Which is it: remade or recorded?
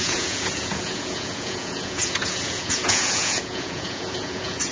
remade